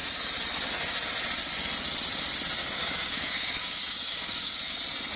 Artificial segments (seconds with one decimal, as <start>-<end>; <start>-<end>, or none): 2.6-4.7